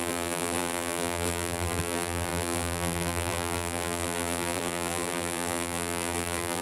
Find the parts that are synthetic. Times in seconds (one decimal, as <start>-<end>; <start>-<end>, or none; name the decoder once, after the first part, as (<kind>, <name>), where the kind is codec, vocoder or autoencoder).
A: 0.0-6.6 (vocoder, BigVGAN v2)